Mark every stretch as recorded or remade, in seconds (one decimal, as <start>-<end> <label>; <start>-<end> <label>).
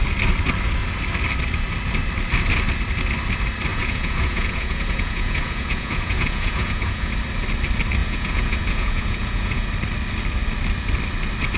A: 0.0-3.7 recorded; 3.7-7.1 remade; 7.1-8.0 recorded; 8.0-9.7 remade; 9.7-11.6 recorded